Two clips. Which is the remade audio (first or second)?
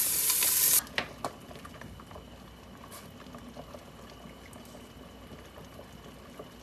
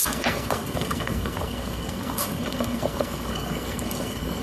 second